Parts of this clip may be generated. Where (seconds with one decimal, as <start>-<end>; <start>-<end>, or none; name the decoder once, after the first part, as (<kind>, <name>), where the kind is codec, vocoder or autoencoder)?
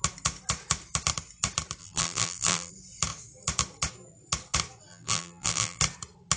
1.8-2.7 (vocoder, BigVGAN v2); 4.9-5.8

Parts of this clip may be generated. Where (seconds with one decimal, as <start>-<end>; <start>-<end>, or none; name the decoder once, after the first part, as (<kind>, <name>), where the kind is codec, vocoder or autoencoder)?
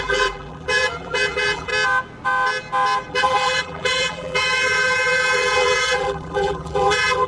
0.0-1.7 (vocoder, BigVGAN v2); 3.1-7.3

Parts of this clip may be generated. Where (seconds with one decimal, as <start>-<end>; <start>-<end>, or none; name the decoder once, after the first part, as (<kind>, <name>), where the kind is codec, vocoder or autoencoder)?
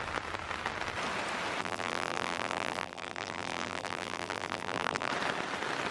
1.6-5.1 (vocoder, BigVGAN v2)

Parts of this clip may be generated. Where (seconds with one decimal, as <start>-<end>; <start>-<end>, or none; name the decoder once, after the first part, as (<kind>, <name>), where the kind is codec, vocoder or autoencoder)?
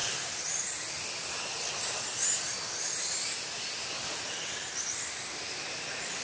0.0-0.6 (vocoder, BigVGAN v2)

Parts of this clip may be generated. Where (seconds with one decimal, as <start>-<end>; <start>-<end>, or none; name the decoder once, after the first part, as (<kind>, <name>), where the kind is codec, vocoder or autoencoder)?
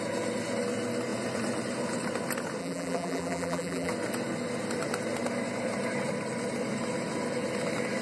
2.6-3.9 (vocoder, BigVGAN v2)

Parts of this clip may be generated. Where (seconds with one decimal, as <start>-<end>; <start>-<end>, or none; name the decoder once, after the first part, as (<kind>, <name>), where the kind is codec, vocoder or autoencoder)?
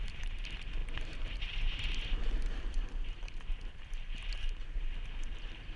0.0-5.8 (vocoder, BigVGAN v2)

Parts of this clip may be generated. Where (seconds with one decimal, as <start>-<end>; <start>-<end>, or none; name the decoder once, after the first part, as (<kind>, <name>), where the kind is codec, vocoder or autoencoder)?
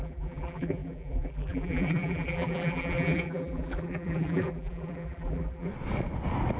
0.0-5.7 (vocoder, BigVGAN v2)